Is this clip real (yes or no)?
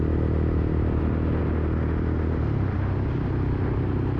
yes